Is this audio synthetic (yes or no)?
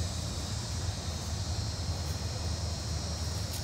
yes